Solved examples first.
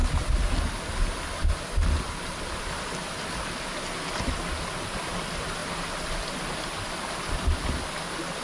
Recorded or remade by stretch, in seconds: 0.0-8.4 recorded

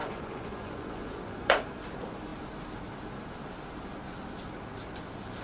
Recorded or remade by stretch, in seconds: 0.0-1.6 remade; 1.6-5.4 recorded

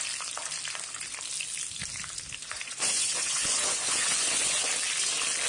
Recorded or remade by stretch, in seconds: 0.0-2.4 recorded; 2.4-4.7 remade; 4.7-5.5 recorded

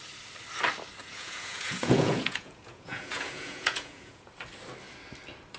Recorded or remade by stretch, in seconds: 0.0-1.0 recorded; 1.0-4.3 remade; 4.3-5.6 recorded

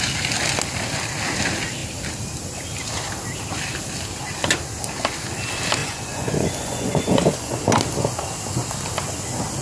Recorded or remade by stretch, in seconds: 0.0-5.8 recorded; 5.8-7.6 remade; 7.6-9.6 recorded